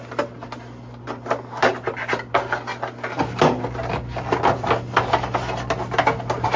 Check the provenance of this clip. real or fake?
real